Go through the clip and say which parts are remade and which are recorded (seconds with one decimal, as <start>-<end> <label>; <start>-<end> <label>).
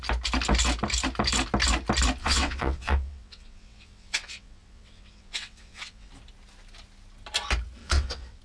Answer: 0.0-2.2 recorded; 2.2-6.1 remade; 6.1-7.8 recorded; 7.8-8.4 remade